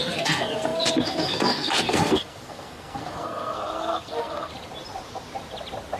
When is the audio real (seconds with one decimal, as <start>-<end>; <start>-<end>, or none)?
4.5-6.0